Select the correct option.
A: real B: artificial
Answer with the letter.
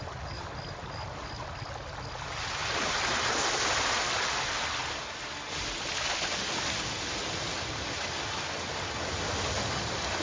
A